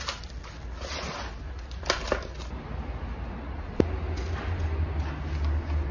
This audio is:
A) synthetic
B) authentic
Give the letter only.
B